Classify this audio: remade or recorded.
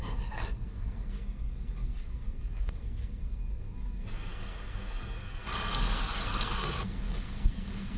remade